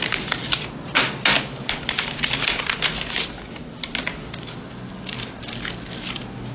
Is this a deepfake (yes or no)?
no